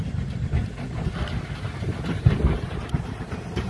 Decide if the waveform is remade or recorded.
recorded